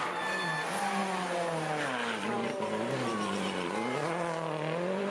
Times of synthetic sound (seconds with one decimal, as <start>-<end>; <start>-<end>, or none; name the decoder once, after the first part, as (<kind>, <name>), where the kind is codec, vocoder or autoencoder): none